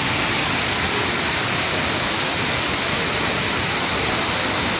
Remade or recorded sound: recorded